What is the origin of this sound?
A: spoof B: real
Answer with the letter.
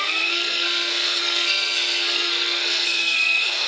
A